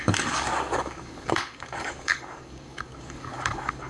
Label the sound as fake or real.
fake